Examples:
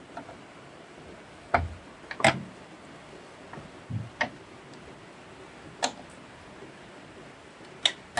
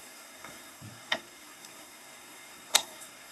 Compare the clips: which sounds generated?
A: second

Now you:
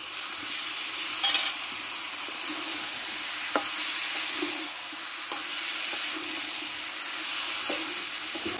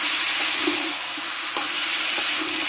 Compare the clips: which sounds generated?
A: second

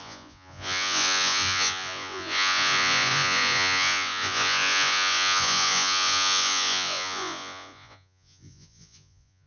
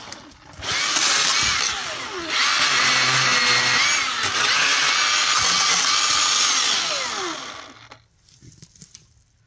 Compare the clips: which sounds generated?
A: first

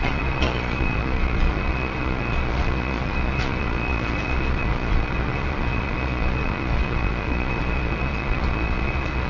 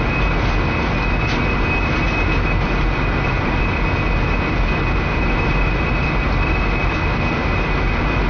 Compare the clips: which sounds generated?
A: first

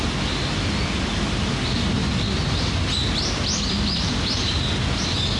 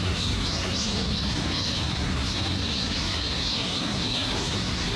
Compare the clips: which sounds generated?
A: second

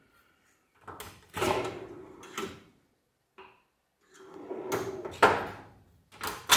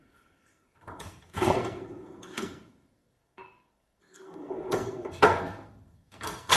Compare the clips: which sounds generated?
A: second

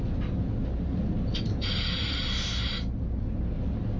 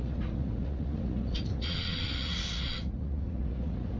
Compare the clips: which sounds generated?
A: second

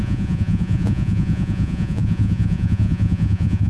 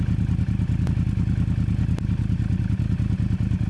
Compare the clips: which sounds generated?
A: first